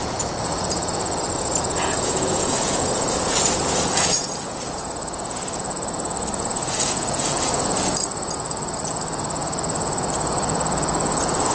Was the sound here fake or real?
fake